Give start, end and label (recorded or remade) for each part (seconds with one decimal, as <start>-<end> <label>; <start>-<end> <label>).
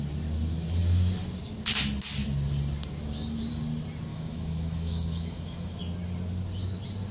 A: 0.0-4.1 recorded; 4.1-5.8 remade; 5.8-7.1 recorded